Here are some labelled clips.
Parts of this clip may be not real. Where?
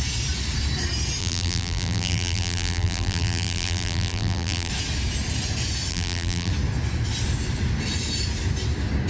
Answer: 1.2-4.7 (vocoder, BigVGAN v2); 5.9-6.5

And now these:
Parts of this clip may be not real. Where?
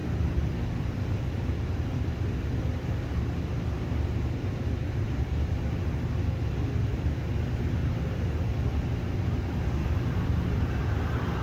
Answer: 0.0-5.2 (vocoder, BigVGAN v2); 7.8-8.4; 9.8-10.4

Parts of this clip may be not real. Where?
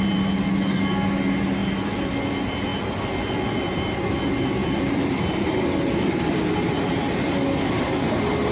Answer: 1.6-2.3 (vocoder, BigVGAN v2); 2.7-4.1; 4.6-8.5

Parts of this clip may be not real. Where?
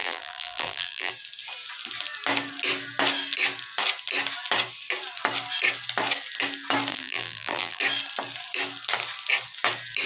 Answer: 0.0-1.1 (vocoder, BigVGAN v2); 6.9-7.8